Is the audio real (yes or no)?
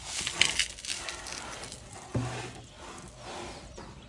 yes